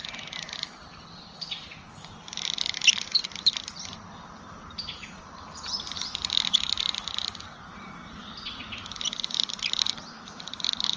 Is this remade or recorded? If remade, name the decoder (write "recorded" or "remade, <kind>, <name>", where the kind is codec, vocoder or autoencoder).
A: remade, vocoder, BigVGAN v2